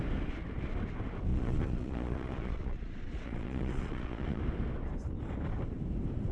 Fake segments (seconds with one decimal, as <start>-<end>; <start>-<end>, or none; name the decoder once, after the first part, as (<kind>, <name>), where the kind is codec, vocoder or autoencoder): 1.3-4.4 (vocoder, Vocos)